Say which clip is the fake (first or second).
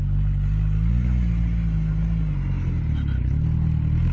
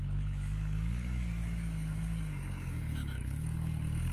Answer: second